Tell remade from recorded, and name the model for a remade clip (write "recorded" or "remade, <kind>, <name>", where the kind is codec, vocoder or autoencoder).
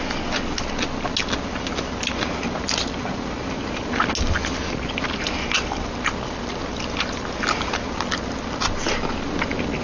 recorded